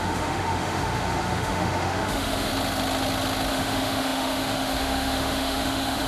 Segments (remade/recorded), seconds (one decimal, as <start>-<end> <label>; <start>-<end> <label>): 0.0-2.5 remade; 2.5-3.5 recorded; 3.5-6.1 remade